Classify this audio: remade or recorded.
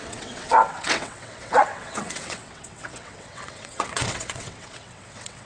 remade